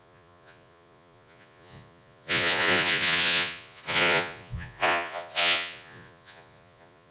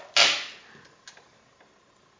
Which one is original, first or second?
second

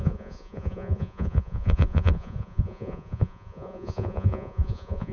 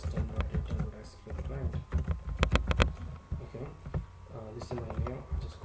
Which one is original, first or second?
second